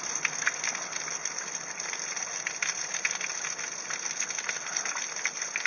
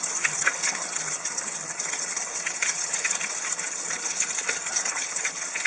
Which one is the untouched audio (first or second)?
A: first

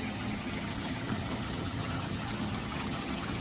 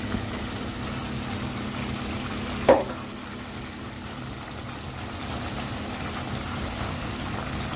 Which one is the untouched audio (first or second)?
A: second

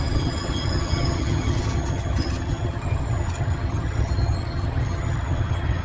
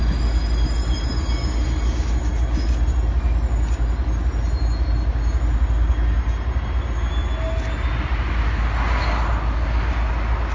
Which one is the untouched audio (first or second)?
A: second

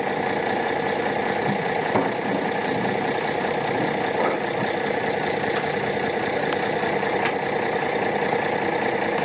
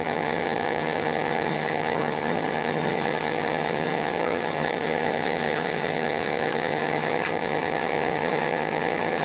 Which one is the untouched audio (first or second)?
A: first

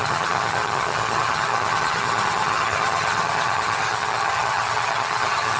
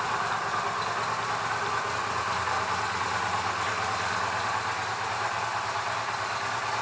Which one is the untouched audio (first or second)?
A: second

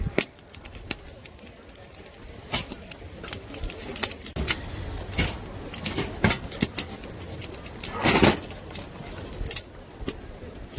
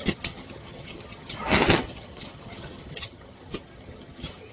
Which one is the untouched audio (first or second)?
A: first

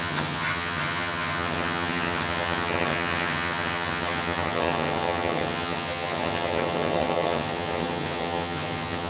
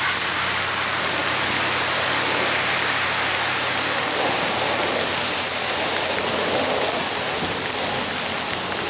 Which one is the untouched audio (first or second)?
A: second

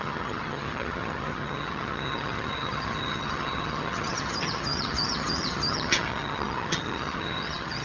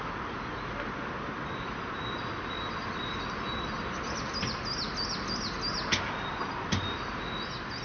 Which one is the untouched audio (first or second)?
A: second